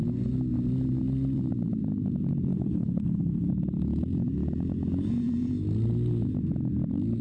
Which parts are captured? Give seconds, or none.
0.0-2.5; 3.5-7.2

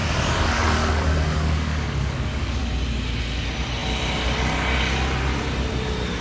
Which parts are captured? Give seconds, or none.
2.6-6.2

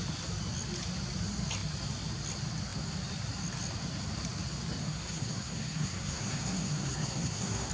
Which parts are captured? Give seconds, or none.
0.0-4.8

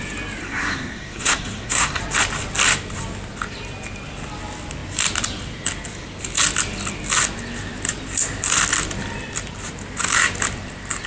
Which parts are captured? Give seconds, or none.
0.0-0.4; 2.0-11.1

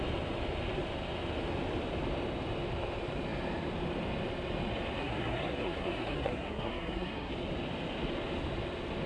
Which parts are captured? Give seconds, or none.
0.0-5.0; 7.3-9.1

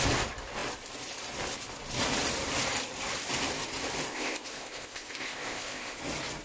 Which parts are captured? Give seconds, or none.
0.0-4.1; 6.0-6.4

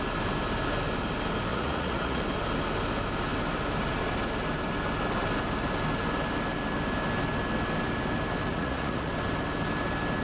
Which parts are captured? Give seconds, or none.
0.0-1.5; 2.2-8.5; 9.1-10.2

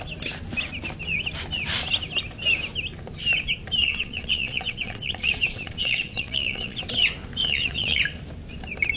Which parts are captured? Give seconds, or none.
0.0-3.8; 6.8-7.4; 8.0-9.0